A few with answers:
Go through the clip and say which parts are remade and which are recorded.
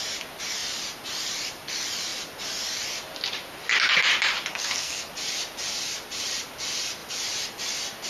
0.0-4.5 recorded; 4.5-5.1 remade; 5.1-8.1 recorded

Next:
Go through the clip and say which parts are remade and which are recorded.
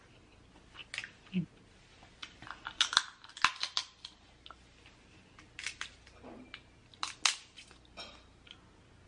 0.0-9.1 recorded